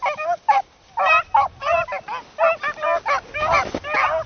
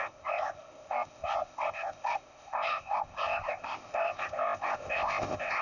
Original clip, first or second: first